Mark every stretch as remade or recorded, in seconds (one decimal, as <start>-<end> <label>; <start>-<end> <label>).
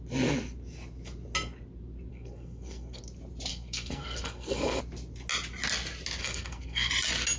0.0-2.1 recorded; 2.1-3.0 remade; 3.0-3.5 recorded; 3.5-4.8 remade; 4.8-6.2 recorded; 6.2-6.9 remade; 6.9-7.4 recorded